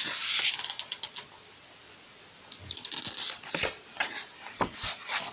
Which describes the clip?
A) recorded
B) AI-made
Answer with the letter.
A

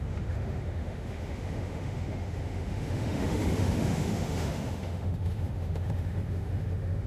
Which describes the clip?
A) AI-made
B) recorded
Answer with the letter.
A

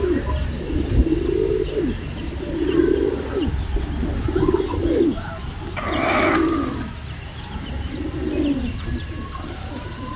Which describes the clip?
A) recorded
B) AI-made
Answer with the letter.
A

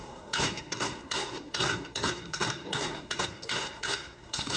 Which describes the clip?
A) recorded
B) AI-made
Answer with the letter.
B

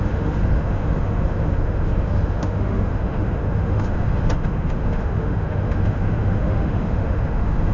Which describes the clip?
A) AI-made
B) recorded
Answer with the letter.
A